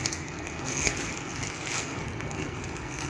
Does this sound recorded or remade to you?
remade